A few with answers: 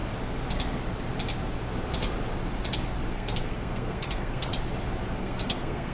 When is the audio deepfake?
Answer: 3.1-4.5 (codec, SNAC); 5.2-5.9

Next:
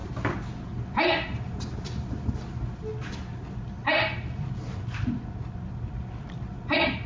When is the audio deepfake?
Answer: none

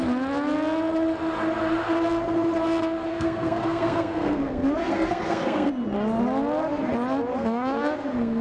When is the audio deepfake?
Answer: 3.1-5.7 (codec, SNAC); 7.3-8.4

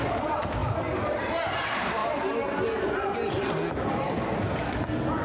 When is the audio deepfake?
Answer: none

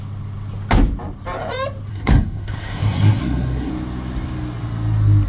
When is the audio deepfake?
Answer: 1.9-3.7 (codec, SNAC)

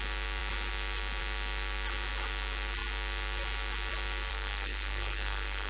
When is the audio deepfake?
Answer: 4.3-5.7 (codec, SNAC)